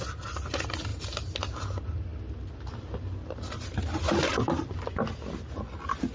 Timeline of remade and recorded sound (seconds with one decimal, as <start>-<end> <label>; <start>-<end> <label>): 0.0-2.1 recorded; 2.1-4.7 remade; 4.7-6.1 recorded